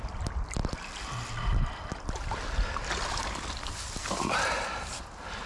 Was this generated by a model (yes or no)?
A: no